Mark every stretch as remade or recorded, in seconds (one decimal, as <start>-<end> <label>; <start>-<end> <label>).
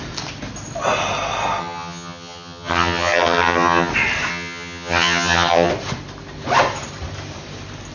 0.0-1.6 recorded; 1.6-3.9 remade; 3.9-4.3 recorded; 4.3-5.7 remade; 5.7-7.9 recorded